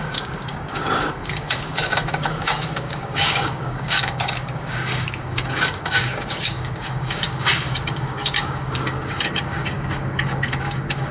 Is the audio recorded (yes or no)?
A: no